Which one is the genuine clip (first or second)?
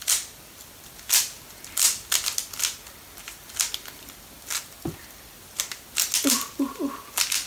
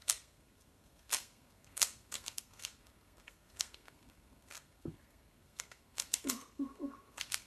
first